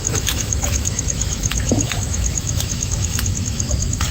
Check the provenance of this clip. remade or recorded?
remade